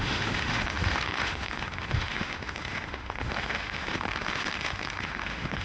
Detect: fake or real fake